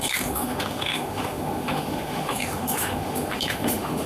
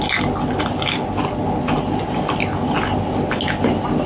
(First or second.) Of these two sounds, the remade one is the first